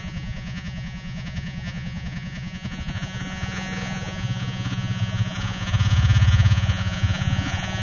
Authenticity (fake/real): fake